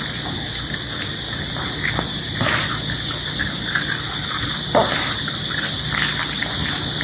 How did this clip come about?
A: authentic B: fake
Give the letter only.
A